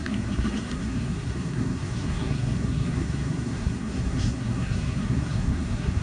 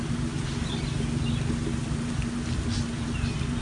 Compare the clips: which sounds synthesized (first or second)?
first